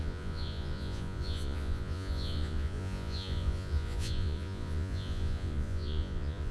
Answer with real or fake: fake